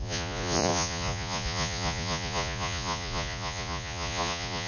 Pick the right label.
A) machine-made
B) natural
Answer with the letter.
A